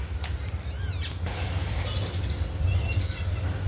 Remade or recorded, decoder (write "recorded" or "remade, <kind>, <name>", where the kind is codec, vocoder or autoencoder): recorded